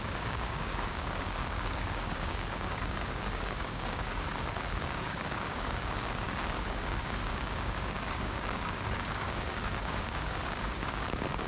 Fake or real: fake